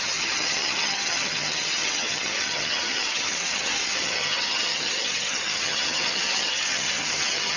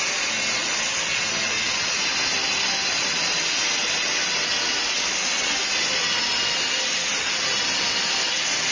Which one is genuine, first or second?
second